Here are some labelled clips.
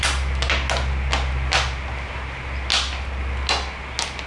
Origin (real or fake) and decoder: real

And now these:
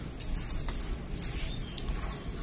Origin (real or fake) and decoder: real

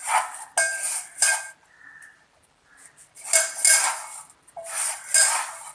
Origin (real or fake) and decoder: real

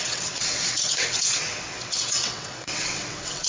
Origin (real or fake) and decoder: fake, vocoder, WaveNeXt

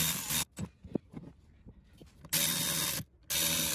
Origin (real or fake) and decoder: real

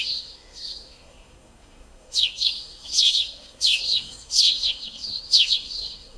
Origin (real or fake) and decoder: fake, codec, SNAC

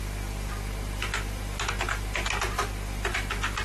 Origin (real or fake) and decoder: real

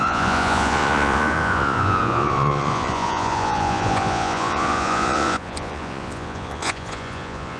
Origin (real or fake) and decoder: fake, vocoder, Vocos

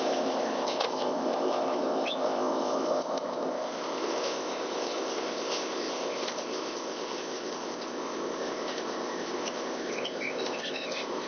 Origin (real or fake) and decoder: fake, codec, ZipCodec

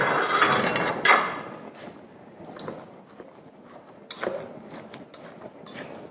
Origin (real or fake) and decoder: real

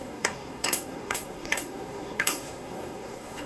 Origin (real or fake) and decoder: fake, codec, SNAC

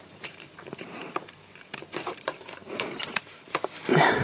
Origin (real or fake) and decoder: fake, vocoder, BigVGAN v2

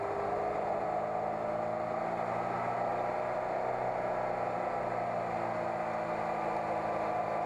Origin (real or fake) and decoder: real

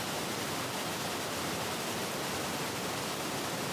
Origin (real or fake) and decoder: real